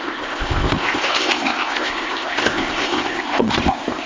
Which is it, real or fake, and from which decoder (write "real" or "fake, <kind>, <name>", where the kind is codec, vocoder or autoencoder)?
fake, codec, ZipCodec